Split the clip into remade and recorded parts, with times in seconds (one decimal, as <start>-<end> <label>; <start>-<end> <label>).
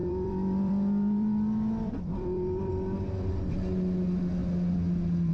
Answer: 0.0-2.7 remade; 2.7-5.3 recorded